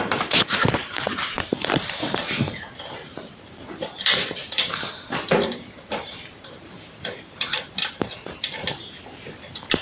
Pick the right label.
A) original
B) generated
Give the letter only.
B